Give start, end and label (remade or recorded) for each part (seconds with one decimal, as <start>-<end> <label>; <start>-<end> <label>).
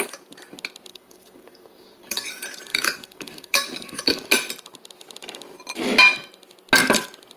0.0-0.9 recorded; 0.9-2.3 remade; 2.3-2.7 recorded; 2.7-4.3 remade; 4.3-7.4 recorded